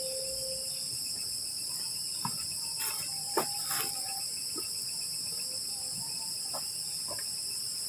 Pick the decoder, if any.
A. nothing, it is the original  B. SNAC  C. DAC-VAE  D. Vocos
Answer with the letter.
A